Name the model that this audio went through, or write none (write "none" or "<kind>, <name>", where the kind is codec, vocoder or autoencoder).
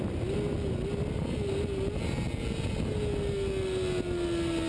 none